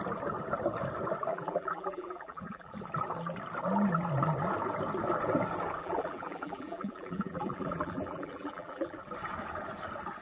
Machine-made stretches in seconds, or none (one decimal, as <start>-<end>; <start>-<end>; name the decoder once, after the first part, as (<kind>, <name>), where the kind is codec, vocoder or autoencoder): 1.3-2.7 (vocoder, BigVGAN v2); 5.8-9.0

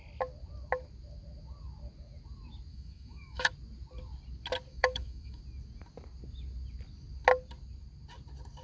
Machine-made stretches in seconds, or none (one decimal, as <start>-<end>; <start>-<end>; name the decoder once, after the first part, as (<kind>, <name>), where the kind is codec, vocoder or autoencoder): 2.7-3.5 (autoencoder, DAC-VAE); 4.7-5.4